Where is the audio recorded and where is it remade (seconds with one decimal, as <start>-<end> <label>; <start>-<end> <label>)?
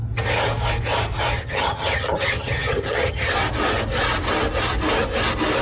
0.0-1.4 recorded; 1.4-3.3 remade; 3.3-5.6 recorded